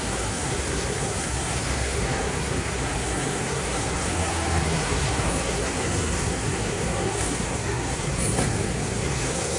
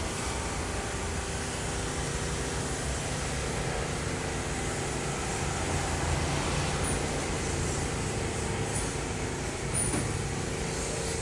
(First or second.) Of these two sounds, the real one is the second